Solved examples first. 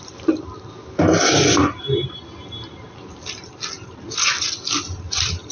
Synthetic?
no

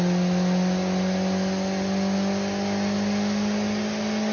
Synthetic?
no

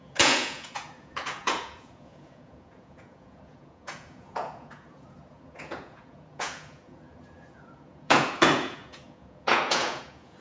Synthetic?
yes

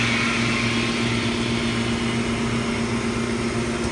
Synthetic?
no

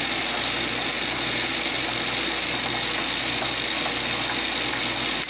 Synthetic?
no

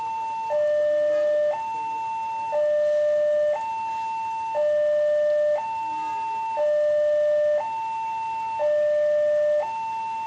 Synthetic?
no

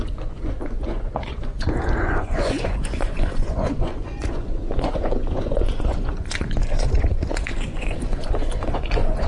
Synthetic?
yes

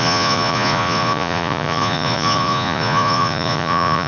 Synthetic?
yes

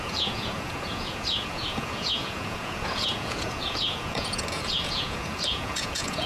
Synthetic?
yes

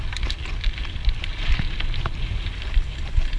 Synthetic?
no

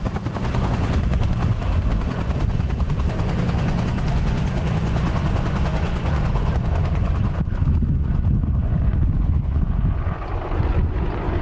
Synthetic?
yes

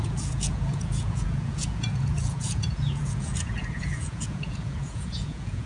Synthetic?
yes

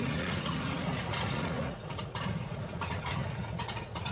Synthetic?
yes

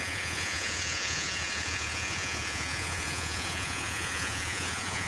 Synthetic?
yes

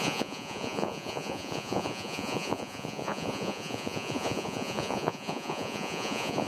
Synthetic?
yes